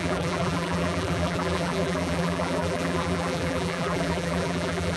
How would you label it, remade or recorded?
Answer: remade